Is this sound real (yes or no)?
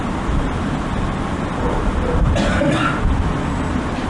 yes